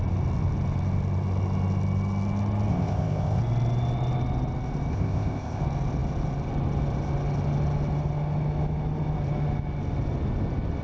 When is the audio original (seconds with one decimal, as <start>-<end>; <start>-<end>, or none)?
0.0-2.7; 3.4-4.9; 5.6-10.8